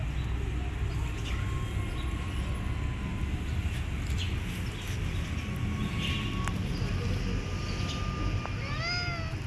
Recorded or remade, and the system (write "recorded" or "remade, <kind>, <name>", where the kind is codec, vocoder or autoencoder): recorded